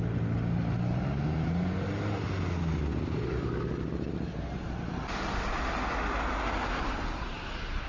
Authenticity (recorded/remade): recorded